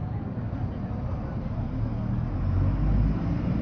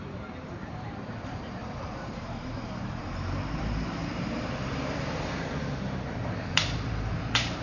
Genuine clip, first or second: first